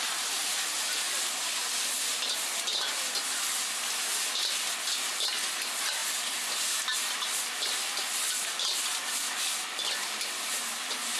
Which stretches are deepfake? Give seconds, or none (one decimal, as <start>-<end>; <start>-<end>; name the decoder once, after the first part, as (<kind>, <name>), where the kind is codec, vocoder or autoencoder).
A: none